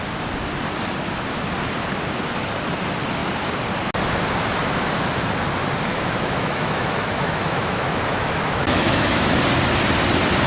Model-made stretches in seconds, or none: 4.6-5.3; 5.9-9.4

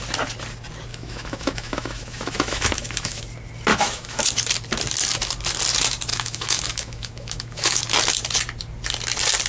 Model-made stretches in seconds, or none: 0.9-3.2; 3.7-4.2; 6.1-7.8

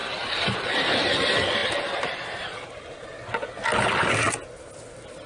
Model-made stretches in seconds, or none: none

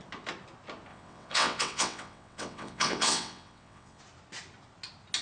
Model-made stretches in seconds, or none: 0.9-4.0

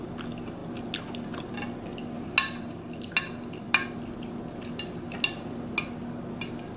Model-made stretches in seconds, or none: none

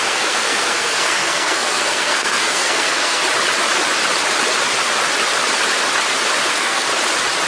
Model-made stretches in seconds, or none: 0.0-3.2; 6.5-6.9

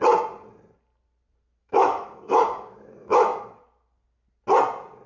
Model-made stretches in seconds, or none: 1.6-3.4